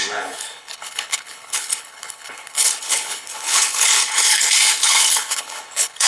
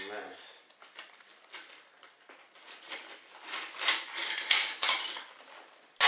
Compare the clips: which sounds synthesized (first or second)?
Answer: first